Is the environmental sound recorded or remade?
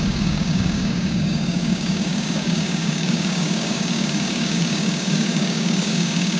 remade